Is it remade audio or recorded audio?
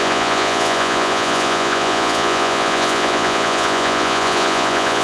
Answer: remade